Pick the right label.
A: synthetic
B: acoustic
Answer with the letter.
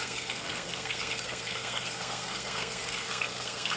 A